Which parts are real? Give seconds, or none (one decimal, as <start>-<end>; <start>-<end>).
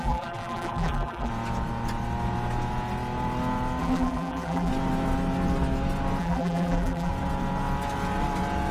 1.3-3.8; 4.7-6.2; 7.1-8.7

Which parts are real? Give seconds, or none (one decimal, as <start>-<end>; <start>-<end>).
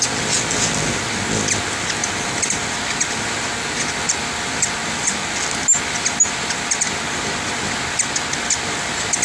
0.0-9.2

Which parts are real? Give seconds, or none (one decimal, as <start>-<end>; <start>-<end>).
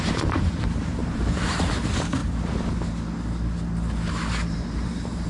2.2-4.5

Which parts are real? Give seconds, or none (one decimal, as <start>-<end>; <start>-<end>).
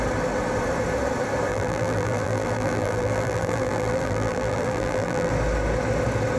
0.0-1.5; 5.3-6.4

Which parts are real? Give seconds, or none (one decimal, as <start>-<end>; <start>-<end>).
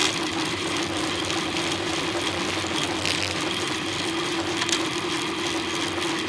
2.3-6.3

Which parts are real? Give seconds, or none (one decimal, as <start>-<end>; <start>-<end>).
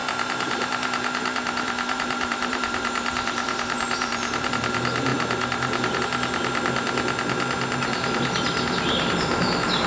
4.5-5.1; 6.0-9.9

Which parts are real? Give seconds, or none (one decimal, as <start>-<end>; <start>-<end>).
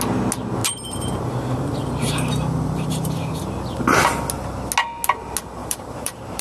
0.0-0.6; 3.4-5.6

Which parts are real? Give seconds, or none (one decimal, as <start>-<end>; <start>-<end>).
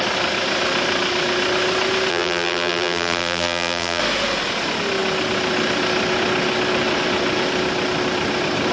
0.0-2.1; 4.0-8.7